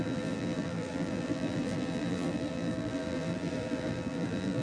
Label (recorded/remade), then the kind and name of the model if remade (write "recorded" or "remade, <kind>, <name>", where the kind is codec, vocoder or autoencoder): remade, vocoder, BigVGAN v2